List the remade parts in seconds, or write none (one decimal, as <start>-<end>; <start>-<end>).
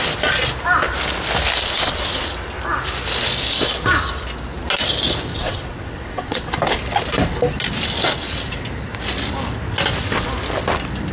5.3-6.5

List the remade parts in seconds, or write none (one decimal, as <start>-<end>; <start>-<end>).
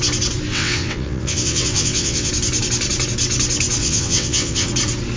0.5-2.3; 3.8-4.7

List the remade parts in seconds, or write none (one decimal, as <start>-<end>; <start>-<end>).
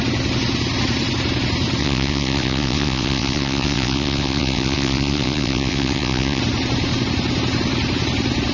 1.8-6.4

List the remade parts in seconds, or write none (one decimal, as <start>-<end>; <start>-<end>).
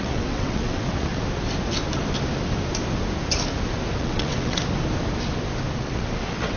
0.0-1.1; 4.0-4.6; 5.8-6.6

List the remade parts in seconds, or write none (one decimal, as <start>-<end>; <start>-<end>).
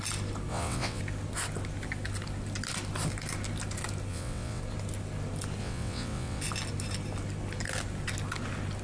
0.5-1.0; 4.1-4.6; 5.6-6.4